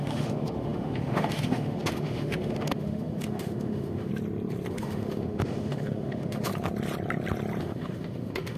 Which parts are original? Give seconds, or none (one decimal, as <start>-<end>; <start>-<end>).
4.1-4.7; 6.5-7.6